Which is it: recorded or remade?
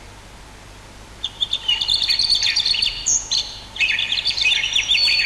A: recorded